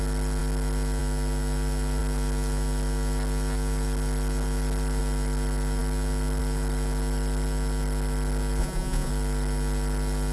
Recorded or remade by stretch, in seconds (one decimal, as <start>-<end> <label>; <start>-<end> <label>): 0.0-8.6 recorded; 8.6-9.1 remade; 9.1-10.3 recorded